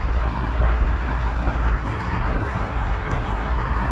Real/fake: fake